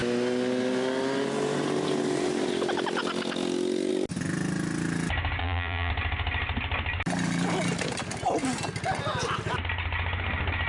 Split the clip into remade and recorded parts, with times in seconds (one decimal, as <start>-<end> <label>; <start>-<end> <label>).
0.0-5.4 recorded; 5.4-5.9 remade; 5.9-10.7 recorded